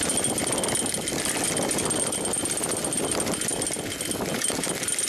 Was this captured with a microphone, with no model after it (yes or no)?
yes